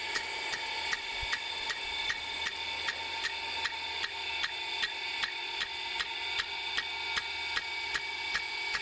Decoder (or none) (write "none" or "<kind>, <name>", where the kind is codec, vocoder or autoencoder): none